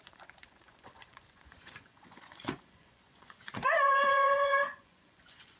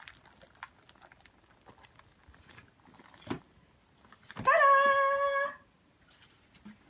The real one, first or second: second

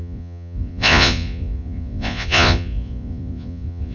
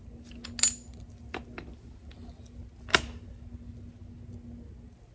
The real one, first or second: second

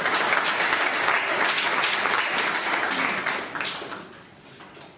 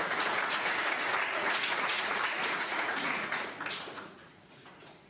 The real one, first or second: first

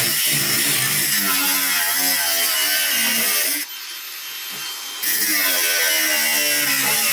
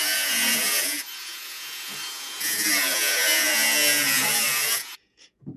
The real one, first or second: first